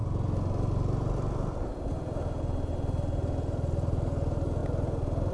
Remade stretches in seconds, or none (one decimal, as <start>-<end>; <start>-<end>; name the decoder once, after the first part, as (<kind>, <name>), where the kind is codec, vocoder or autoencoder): none